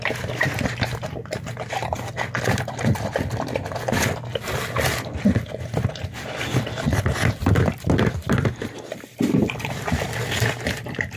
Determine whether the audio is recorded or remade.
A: recorded